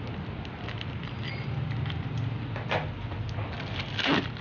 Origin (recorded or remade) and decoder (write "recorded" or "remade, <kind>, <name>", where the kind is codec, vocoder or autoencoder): recorded